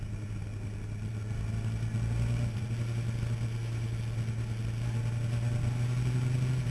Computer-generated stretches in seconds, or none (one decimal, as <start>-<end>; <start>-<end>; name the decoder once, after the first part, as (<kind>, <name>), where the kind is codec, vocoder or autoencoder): none